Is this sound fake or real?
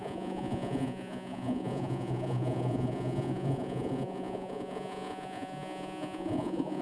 fake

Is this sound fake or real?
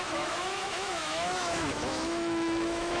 fake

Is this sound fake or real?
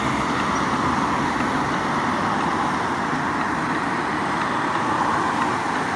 real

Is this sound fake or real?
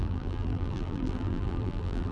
fake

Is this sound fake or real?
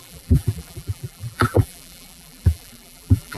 fake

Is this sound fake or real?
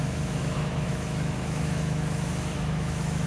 fake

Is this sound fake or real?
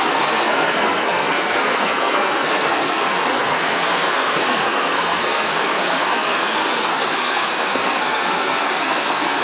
fake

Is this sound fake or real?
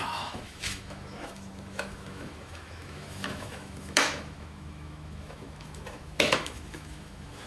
fake